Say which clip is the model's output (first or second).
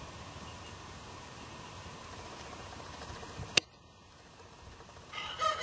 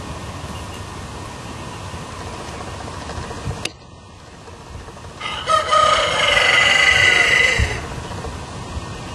first